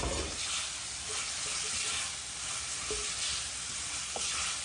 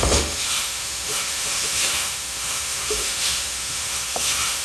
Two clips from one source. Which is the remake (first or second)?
second